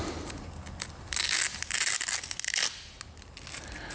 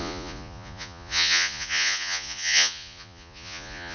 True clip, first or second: first